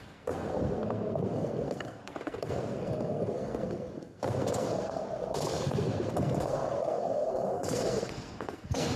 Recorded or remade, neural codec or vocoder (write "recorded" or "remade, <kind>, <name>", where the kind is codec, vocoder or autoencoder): remade, codec, SNAC